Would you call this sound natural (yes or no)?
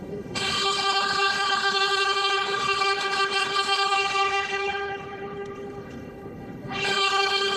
no